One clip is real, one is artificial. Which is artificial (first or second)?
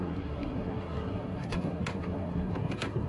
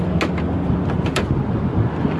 first